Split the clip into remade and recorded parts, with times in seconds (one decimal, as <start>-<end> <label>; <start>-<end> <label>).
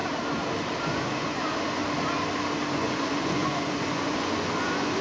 0.0-0.8 recorded; 0.8-1.8 remade; 1.8-2.7 recorded; 2.7-5.0 remade